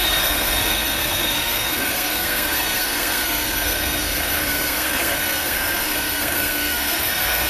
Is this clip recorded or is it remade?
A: remade